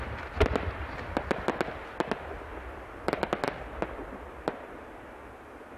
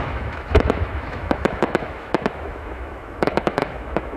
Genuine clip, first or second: first